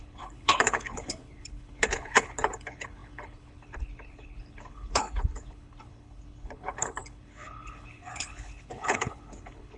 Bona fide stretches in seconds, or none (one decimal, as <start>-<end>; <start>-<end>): none